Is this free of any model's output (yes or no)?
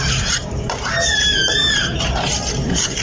no